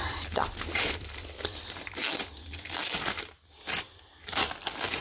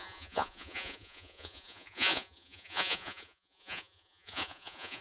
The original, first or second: first